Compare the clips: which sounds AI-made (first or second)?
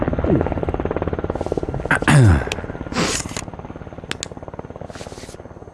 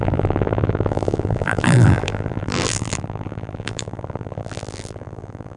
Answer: second